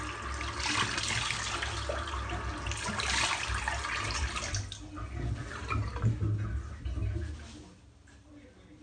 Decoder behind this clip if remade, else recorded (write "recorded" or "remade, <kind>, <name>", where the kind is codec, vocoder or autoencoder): recorded